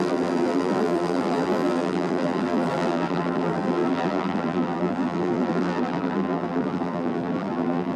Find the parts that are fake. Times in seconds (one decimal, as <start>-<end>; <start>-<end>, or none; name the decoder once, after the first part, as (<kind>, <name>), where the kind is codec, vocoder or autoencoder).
0.0-8.0 (vocoder, BigVGAN v2)